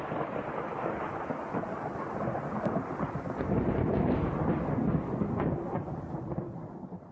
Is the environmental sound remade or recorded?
remade